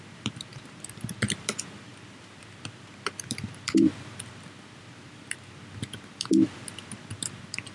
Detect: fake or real fake